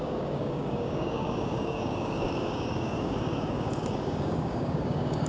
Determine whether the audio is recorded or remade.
remade